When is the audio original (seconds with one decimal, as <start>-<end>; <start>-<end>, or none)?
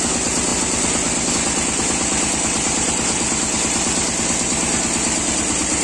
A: 0.0-5.8